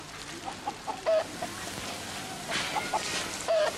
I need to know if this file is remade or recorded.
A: recorded